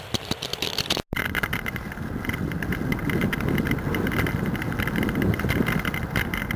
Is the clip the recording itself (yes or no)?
yes